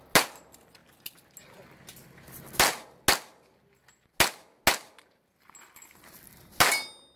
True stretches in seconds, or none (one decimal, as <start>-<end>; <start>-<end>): 0.0-7.2